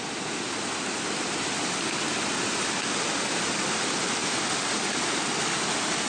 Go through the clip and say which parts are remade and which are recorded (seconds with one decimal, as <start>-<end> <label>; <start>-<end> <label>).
0.0-6.1 recorded